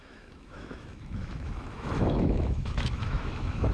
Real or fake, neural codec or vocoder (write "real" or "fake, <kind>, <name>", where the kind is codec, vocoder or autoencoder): fake, autoencoder, DAC-VAE